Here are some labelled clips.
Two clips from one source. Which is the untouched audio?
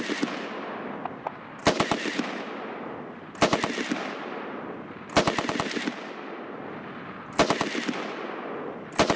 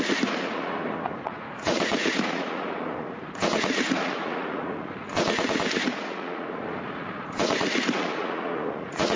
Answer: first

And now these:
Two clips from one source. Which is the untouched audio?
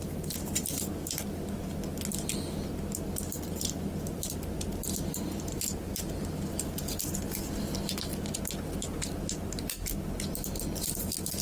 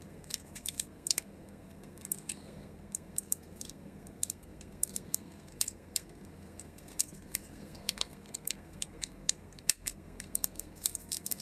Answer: first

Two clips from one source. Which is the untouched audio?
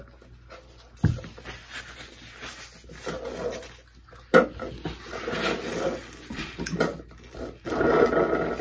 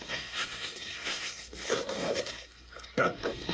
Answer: first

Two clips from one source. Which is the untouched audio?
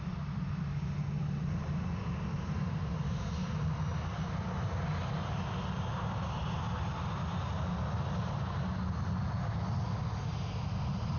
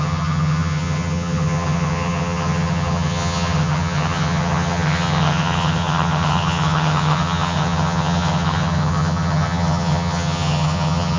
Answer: first